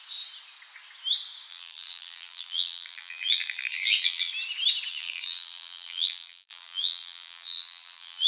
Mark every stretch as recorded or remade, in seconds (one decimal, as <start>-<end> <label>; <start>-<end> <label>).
0.0-1.5 recorded; 1.5-4.3 remade; 4.3-4.9 recorded; 4.9-8.3 remade